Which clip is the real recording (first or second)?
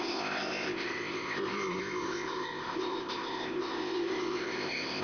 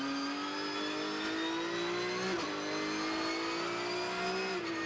second